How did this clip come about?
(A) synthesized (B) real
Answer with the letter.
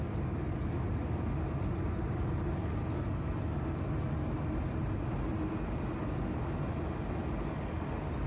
B